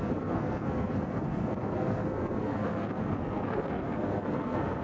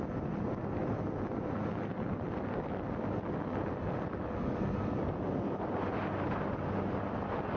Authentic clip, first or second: second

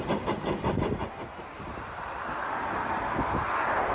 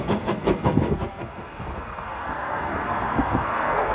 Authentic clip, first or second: first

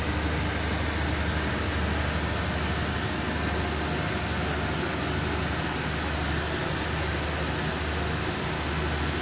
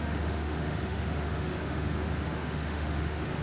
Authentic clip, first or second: first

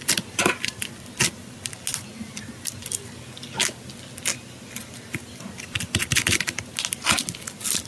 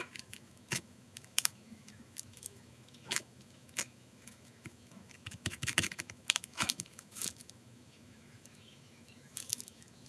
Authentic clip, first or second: first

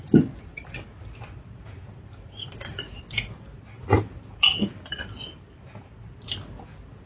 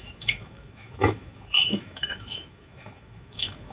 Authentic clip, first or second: first